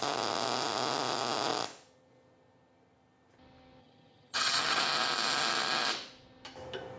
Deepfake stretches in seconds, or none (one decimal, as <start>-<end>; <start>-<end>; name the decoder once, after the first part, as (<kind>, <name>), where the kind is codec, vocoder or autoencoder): 3.8-4.8 (vocoder, HiFi-GAN)